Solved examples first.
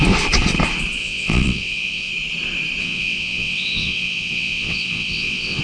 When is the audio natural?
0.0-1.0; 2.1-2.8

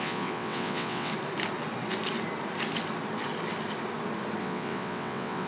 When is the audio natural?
1.1-4.4

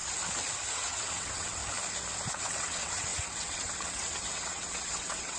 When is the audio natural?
0.0-0.7; 1.6-2.3

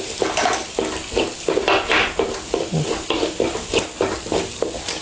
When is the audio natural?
0.0-5.0